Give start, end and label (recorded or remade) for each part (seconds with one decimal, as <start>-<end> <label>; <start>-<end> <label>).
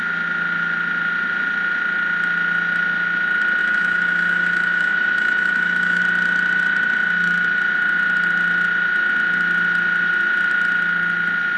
0.0-3.6 recorded; 3.6-6.0 remade; 6.0-11.6 recorded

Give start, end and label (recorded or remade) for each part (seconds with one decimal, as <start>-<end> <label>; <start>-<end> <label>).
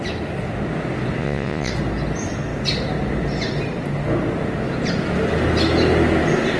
0.0-1.2 recorded; 1.2-1.7 remade; 1.7-6.6 recorded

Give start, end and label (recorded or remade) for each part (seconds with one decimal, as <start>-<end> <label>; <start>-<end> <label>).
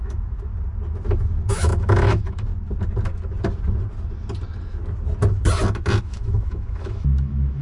0.0-0.5 remade; 0.5-1.5 recorded; 1.5-2.5 remade; 2.5-6.0 recorded; 6.0-7.6 remade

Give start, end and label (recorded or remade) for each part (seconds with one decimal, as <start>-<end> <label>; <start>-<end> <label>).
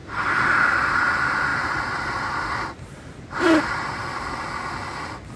0.0-5.4 recorded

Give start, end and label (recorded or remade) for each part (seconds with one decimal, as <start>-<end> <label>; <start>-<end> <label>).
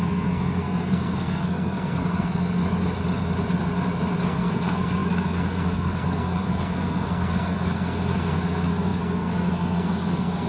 0.0-2.6 remade; 2.6-4.2 recorded; 4.2-10.5 remade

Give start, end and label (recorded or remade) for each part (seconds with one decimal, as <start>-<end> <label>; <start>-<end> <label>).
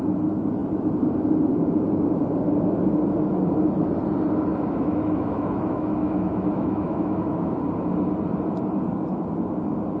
0.0-4.5 recorded; 4.5-7.6 remade; 7.6-10.0 recorded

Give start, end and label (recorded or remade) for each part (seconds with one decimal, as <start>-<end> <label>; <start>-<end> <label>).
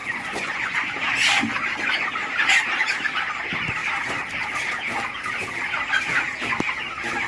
0.0-0.9 remade; 0.9-7.3 recorded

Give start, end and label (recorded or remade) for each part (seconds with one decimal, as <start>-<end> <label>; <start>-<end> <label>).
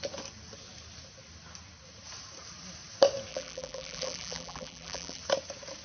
0.0-3.3 recorded; 3.3-5.2 remade; 5.2-5.8 recorded